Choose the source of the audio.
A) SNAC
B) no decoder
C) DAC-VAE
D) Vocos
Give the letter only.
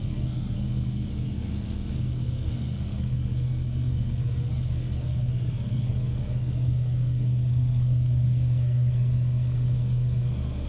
A